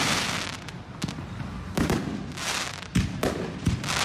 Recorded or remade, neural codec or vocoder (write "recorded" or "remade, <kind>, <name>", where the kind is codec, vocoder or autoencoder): recorded